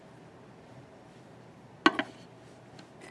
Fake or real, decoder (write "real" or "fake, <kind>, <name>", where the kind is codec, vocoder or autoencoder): real